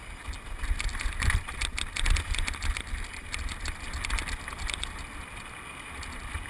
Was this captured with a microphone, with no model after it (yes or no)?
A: yes